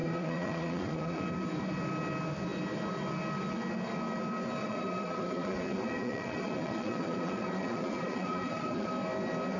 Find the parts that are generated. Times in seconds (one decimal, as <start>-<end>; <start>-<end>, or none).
0.0-1.2; 4.6-8.9